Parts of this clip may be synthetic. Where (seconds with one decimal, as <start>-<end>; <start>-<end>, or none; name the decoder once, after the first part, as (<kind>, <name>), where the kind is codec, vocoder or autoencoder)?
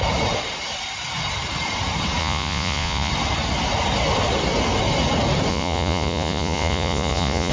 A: 2.2-3.1 (vocoder, Vocos); 5.5-7.5